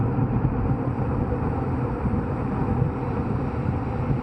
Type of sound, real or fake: real